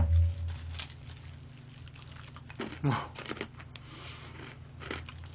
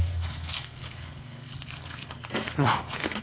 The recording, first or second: first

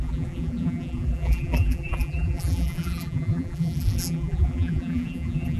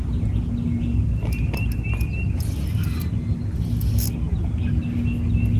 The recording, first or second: second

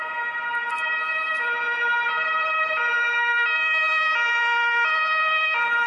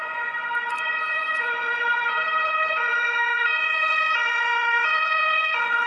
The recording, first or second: first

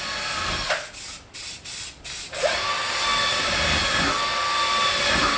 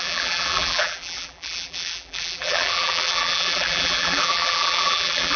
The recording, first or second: first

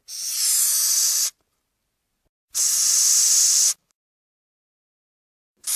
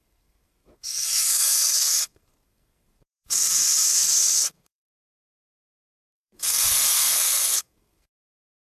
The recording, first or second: first